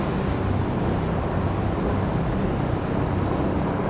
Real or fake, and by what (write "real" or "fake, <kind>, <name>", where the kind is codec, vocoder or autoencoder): real